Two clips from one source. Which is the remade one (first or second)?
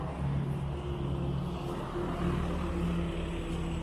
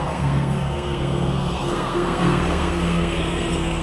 second